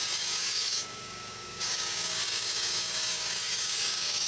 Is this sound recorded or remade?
remade